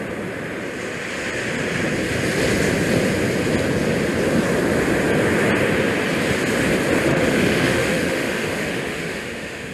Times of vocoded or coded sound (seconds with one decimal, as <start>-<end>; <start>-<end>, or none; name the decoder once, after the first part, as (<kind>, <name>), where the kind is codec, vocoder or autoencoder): 7.1-9.7 (autoencoder, DAC-VAE)

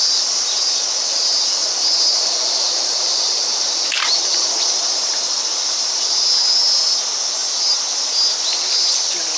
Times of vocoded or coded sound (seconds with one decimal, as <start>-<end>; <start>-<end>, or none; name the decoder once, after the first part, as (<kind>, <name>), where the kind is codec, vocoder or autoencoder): none

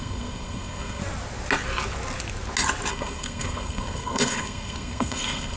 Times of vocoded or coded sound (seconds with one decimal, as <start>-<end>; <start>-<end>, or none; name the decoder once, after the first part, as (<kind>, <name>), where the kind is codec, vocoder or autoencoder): 0.0-1.0 (codec, SNAC); 2.9-5.6

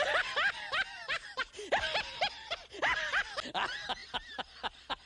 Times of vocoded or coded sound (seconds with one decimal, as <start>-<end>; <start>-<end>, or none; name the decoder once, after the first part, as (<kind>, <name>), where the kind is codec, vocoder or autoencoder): none

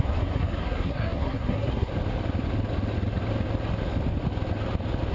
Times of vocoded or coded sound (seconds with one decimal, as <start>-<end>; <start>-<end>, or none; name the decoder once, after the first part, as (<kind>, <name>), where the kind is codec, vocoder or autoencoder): 0.0-1.9 (codec, SNAC)

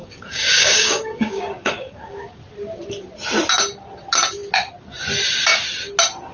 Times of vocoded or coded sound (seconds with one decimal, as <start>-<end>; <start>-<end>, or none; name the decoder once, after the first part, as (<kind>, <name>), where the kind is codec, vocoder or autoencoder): 0.0-2.4 (codec, DAC)

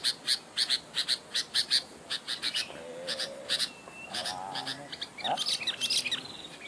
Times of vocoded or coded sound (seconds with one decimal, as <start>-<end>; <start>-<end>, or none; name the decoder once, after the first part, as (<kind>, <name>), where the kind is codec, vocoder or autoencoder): none